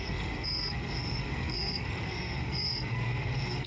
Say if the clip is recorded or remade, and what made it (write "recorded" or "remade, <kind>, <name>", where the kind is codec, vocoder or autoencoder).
remade, codec, SNAC